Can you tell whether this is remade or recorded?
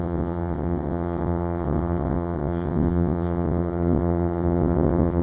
remade